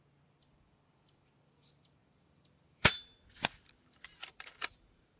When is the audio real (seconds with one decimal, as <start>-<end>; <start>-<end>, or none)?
none